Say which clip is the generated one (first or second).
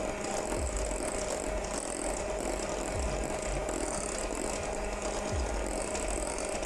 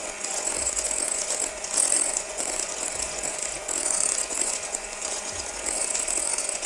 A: second